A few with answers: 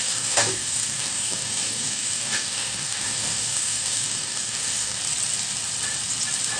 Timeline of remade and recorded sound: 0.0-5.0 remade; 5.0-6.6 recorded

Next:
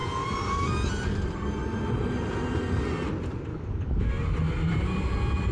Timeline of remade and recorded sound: 0.0-3.5 recorded; 3.5-4.1 remade; 4.1-5.5 recorded

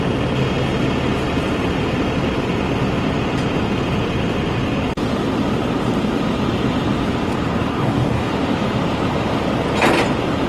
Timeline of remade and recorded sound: 0.0-7.7 recorded; 7.7-8.3 remade; 8.3-10.5 recorded

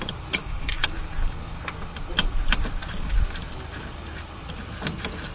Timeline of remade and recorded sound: 0.0-0.4 recorded; 0.4-1.0 remade; 1.0-5.3 recorded